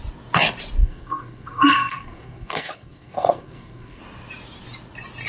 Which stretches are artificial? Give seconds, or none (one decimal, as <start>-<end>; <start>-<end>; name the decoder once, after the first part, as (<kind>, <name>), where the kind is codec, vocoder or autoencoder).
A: 0.8-4.0 (codec, SNAC)